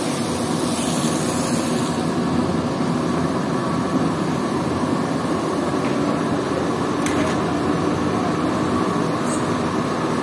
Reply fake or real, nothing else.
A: real